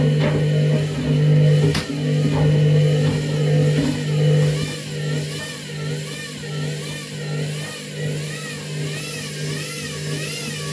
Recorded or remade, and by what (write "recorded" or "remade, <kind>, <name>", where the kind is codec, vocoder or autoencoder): recorded